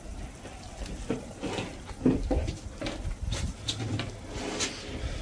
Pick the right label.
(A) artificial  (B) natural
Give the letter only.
B